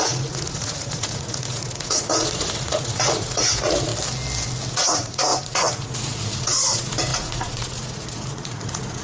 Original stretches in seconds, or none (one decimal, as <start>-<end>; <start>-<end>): 3.9-4.7